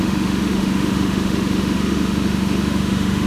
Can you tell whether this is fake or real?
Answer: fake